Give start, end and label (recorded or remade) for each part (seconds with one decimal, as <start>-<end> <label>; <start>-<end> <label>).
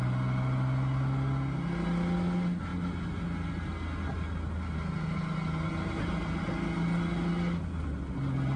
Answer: 0.0-8.6 recorded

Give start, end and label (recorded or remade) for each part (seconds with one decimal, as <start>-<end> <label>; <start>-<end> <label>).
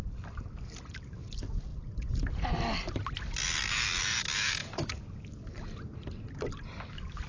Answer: 0.0-4.6 recorded; 4.6-5.2 remade; 5.2-7.3 recorded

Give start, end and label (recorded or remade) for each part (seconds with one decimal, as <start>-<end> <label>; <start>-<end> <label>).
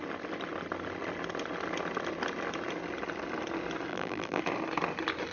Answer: 0.0-3.9 recorded; 3.9-4.4 remade; 4.4-5.3 recorded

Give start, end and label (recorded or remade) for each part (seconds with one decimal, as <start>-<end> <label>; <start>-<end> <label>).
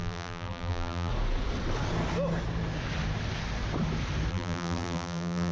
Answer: 0.0-1.1 remade; 1.1-4.3 recorded; 4.3-5.5 remade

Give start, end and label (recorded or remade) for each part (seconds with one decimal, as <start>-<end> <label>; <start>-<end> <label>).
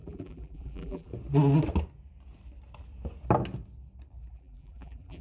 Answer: 0.0-1.1 remade; 1.1-4.2 recorded; 4.2-5.2 remade